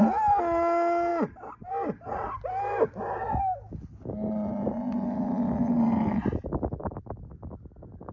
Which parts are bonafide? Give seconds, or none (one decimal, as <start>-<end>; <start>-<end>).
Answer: 0.0-8.1